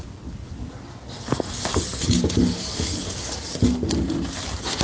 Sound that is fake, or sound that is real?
real